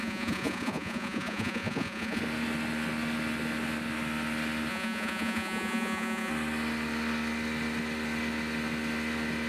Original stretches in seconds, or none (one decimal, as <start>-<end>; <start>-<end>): 2.2-4.7; 6.3-9.5